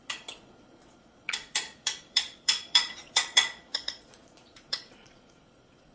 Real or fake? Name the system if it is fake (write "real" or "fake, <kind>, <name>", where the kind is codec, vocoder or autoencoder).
fake, vocoder, Vocos